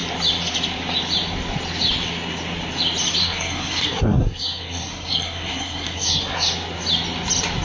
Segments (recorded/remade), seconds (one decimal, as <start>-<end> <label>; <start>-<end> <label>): 0.0-3.2 recorded; 3.2-6.5 remade; 6.5-7.6 recorded

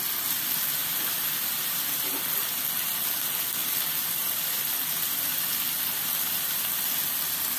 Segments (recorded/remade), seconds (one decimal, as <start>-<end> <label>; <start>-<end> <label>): 0.0-0.8 recorded; 0.8-2.2 remade; 2.2-7.6 recorded

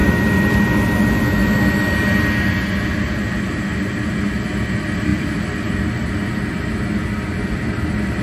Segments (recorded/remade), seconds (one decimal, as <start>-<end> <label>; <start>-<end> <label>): 0.0-5.1 recorded; 5.1-5.7 remade; 5.7-8.2 recorded

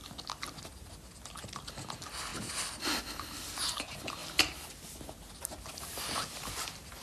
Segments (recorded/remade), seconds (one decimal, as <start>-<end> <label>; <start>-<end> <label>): 0.0-7.0 recorded

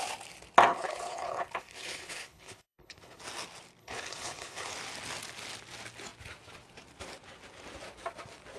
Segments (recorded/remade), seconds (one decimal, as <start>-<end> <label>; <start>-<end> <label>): 0.0-0.7 recorded; 0.7-3.2 remade; 3.2-3.8 recorded; 3.8-4.7 remade; 4.7-8.6 recorded